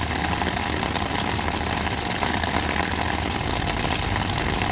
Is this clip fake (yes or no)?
no